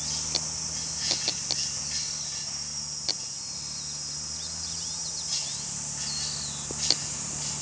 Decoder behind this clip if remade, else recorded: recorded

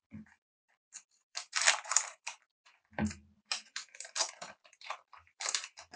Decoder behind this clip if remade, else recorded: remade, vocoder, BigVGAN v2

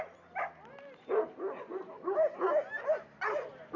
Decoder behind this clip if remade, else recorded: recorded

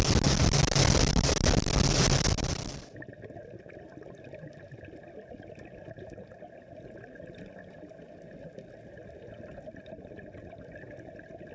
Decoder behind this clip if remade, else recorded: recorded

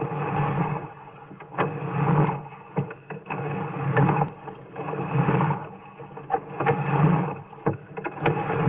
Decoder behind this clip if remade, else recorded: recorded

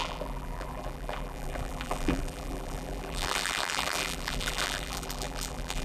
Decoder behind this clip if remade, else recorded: remade, vocoder, BigVGAN v2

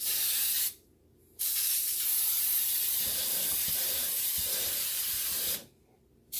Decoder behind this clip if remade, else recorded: remade, vocoder, BigVGAN v2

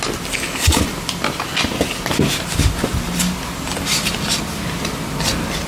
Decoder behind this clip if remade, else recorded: recorded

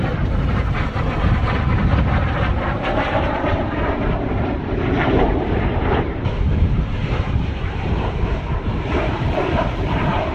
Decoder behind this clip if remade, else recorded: remade, vocoder, BigVGAN v2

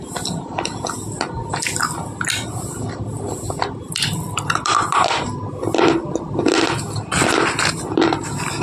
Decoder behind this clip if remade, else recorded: recorded